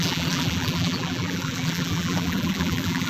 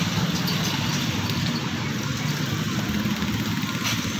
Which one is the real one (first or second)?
second